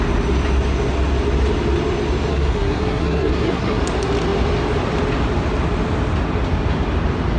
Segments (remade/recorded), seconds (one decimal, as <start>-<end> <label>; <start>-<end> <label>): 0.0-2.3 recorded; 2.3-3.8 remade; 3.8-7.4 recorded